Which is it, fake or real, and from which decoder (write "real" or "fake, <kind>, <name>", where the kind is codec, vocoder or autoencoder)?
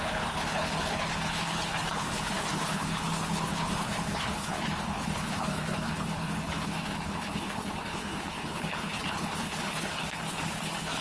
fake, codec, HILCodec